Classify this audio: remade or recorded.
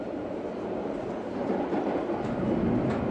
recorded